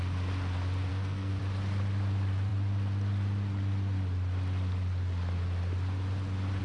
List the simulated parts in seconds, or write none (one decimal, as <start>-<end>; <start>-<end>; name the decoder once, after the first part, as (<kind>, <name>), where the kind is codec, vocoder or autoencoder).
0.9-1.4 (codec, SNAC)